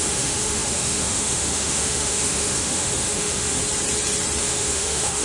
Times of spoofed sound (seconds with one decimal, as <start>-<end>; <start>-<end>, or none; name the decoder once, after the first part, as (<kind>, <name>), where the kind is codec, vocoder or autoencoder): 0.0-3.6 (autoencoder, DAC-VAE); 4.4-5.2